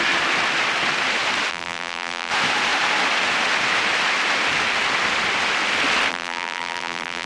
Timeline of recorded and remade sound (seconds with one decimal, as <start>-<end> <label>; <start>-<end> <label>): 0.0-1.5 recorded; 1.5-2.3 remade; 2.3-6.1 recorded; 6.1-7.3 remade